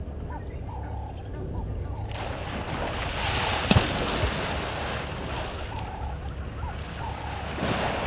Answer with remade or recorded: recorded